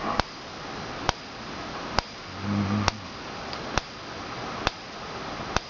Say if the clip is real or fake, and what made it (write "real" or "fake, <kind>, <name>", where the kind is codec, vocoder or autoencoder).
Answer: real